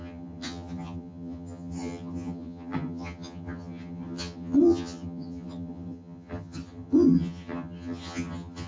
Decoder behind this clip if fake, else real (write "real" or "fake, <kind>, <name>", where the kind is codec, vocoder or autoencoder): fake, vocoder, HiFi-GAN